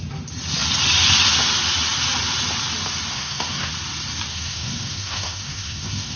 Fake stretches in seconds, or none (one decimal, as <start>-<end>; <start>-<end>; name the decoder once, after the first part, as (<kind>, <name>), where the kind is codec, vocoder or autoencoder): 3.1-3.7 (codec, SNAC); 4.3-6.2